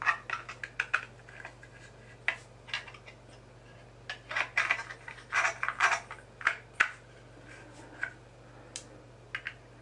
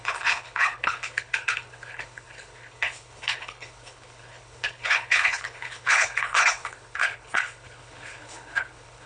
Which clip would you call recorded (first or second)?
first